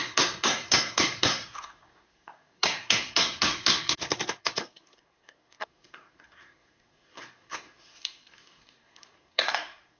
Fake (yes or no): yes